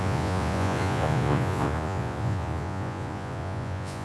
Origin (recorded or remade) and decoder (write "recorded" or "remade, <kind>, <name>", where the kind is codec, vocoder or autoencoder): remade, vocoder, Vocos